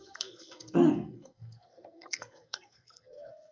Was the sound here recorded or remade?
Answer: remade